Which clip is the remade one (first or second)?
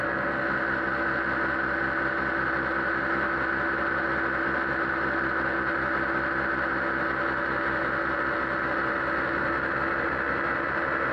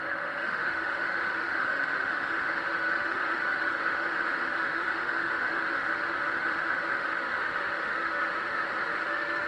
second